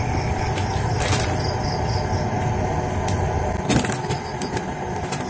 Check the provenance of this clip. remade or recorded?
recorded